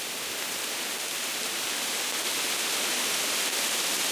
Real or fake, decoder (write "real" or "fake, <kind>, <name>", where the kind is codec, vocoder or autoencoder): real